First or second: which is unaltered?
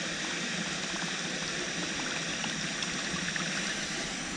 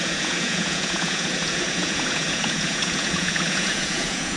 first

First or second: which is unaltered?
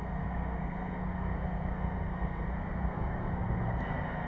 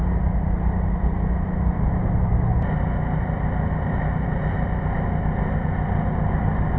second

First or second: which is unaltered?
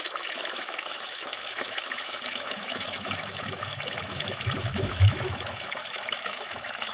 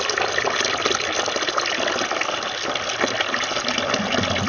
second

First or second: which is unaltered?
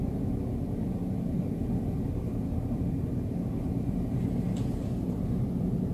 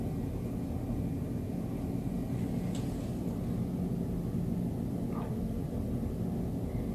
second